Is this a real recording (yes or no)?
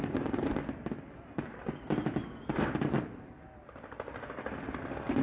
yes